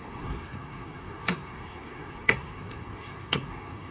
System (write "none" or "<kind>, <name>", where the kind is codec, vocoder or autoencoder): codec, SNAC